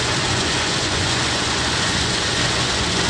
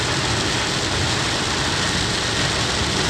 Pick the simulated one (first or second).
first